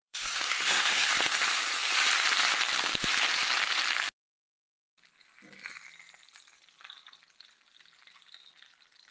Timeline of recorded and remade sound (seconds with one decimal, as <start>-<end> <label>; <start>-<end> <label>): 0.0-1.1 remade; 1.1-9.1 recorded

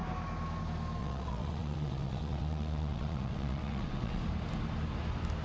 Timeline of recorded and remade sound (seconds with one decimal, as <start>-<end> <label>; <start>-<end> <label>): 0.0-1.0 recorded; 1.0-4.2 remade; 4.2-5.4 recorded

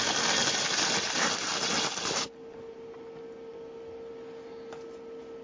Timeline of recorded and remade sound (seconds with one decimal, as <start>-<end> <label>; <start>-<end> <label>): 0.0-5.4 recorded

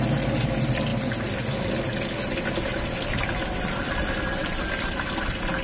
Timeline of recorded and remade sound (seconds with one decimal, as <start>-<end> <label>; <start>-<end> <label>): 0.0-0.9 remade; 0.9-3.8 recorded; 3.8-4.4 remade; 4.4-4.9 recorded; 4.9-5.6 remade